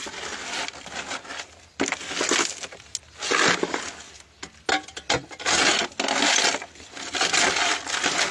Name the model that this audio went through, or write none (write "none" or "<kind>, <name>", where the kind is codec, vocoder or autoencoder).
none